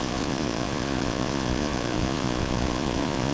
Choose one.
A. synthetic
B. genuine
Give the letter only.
A